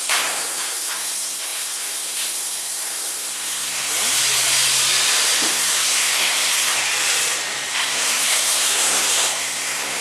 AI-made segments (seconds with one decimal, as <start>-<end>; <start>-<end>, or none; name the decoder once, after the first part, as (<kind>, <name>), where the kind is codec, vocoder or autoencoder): 0.0-3.9 (codec, SNAC); 5.5-6.9; 7.7-10.0